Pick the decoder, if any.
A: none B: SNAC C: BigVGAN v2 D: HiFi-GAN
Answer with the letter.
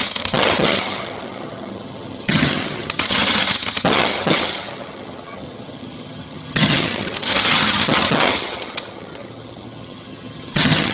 D